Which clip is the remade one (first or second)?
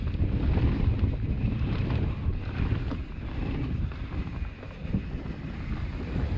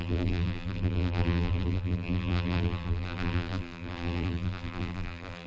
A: second